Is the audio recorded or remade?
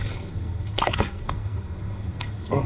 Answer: remade